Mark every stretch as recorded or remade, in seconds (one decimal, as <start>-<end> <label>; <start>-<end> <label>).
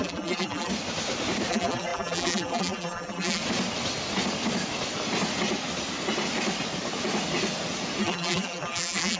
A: 0.0-0.7 remade; 0.7-1.5 recorded; 1.5-3.4 remade; 3.4-8.0 recorded; 8.0-9.2 remade